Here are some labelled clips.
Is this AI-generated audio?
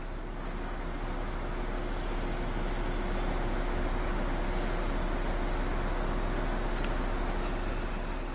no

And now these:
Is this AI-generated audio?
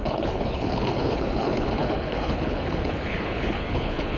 yes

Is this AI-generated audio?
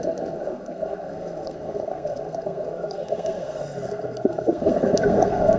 yes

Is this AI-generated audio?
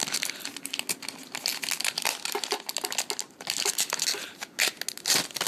no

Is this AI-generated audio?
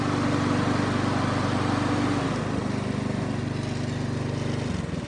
no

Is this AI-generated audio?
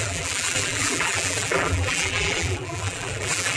yes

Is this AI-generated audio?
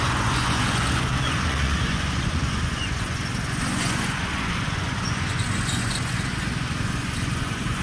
yes